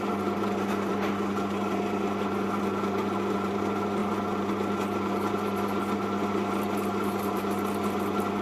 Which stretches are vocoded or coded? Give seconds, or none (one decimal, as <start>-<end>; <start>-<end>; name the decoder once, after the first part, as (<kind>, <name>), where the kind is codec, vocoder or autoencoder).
none